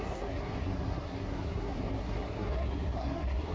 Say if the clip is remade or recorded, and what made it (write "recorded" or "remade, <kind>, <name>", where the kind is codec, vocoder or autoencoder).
remade, codec, SNAC